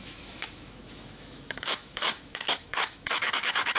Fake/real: fake